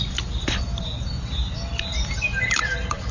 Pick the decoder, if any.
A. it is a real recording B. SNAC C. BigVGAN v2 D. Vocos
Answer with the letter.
A